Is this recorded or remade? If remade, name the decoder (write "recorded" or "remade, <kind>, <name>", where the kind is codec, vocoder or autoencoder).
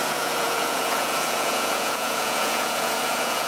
remade, vocoder, Vocos